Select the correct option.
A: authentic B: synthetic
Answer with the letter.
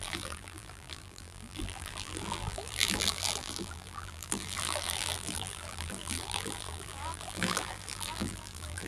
B